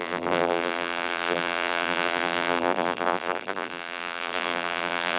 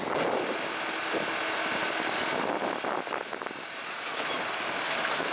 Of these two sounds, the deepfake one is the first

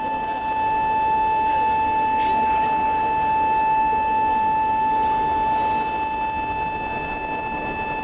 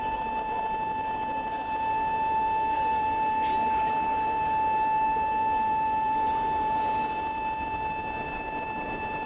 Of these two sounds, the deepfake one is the second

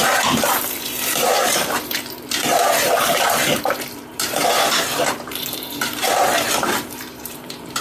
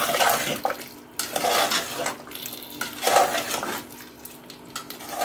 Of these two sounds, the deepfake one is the first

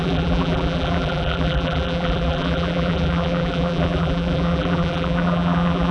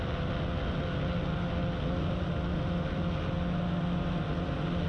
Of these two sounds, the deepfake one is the first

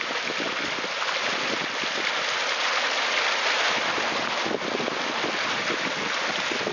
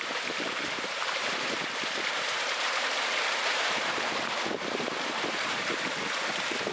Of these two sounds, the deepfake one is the second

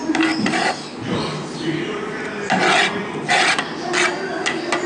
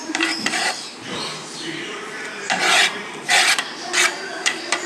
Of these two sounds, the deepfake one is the second